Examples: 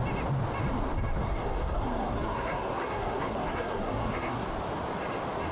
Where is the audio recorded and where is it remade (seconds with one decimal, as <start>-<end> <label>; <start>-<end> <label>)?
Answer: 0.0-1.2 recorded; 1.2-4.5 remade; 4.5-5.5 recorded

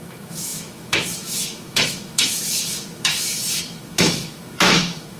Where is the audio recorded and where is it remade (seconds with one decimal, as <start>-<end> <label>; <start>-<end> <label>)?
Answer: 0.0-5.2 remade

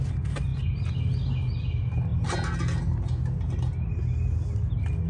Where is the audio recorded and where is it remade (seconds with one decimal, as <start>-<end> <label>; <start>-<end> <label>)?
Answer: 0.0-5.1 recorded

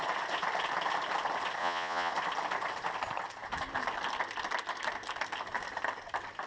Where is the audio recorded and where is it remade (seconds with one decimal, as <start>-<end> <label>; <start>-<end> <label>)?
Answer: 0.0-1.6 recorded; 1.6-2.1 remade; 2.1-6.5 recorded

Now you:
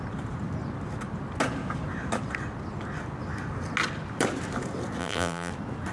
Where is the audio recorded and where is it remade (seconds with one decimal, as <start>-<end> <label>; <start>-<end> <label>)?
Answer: 0.0-5.0 recorded; 5.0-5.5 remade; 5.5-5.9 recorded

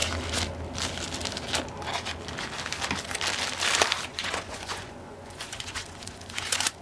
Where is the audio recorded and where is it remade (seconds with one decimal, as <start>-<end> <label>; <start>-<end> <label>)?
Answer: 0.0-4.1 recorded; 4.1-6.8 remade

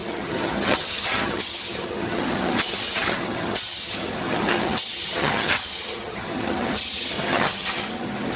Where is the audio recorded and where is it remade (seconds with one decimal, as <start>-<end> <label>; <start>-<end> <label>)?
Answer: 0.0-8.4 remade